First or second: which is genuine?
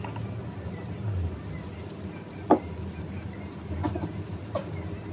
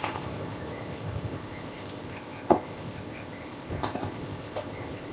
first